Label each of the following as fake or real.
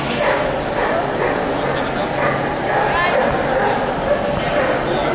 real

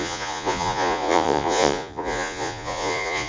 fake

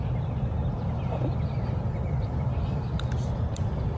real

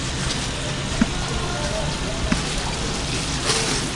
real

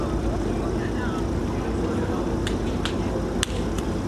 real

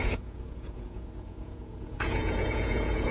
fake